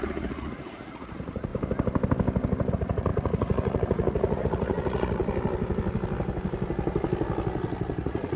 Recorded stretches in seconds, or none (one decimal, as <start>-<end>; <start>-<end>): 1.5-2.7; 5.2-8.0